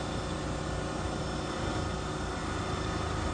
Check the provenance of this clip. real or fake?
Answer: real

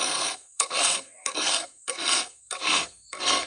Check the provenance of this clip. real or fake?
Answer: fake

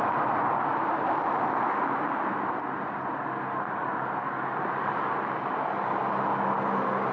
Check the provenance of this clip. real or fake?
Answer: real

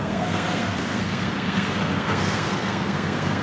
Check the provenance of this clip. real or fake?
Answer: fake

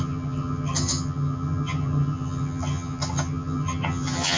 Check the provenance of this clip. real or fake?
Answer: fake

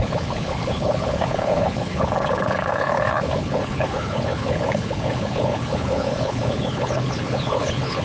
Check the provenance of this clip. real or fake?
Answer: fake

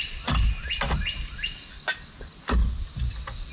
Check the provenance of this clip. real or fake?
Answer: real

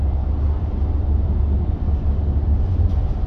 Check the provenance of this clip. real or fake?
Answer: real